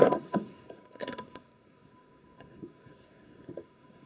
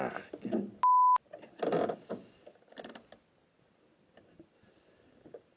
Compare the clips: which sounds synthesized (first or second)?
first